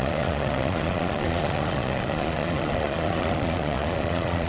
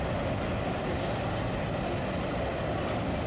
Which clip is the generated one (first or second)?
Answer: first